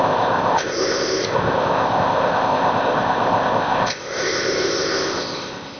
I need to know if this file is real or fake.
fake